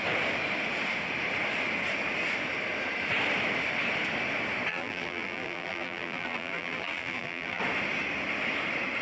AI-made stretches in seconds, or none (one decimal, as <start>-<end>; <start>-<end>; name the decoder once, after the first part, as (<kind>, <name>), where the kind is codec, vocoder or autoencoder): 4.7-7.6 (vocoder, BigVGAN v2)